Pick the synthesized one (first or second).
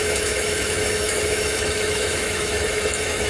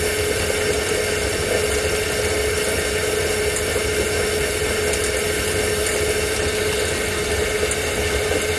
first